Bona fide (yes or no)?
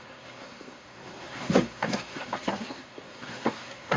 no